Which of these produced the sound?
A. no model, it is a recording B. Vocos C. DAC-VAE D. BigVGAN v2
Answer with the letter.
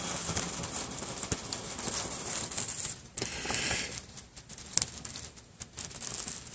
A